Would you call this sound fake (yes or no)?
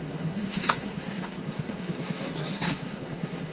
yes